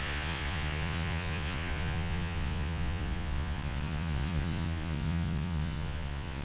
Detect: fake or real fake